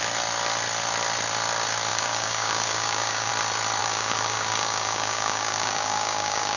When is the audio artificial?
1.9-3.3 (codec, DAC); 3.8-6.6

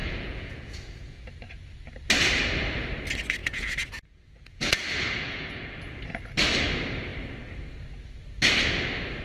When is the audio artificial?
0.0-1.2 (vocoder, Vocos); 3.4-6.0

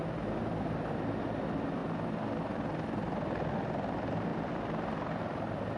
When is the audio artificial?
none

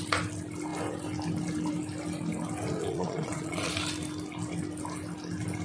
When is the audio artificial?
2.8-3.7 (vocoder, Vocos)

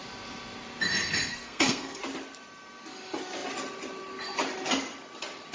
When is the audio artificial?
1.3-2.0 (codec, SNAC)

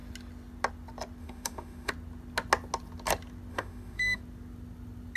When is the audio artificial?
1.2-1.9 (autoencoder, DAC-VAE); 3.5-4.2

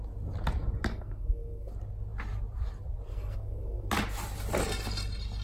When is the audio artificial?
0.9-1.7 (codec, SNAC); 3.1-3.9